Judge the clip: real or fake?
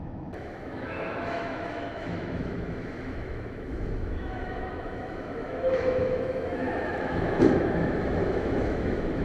fake